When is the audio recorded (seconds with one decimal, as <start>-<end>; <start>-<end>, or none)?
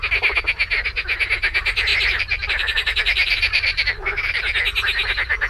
0.0-1.9; 4.4-5.5